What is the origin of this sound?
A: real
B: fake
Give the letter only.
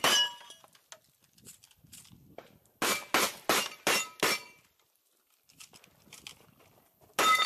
A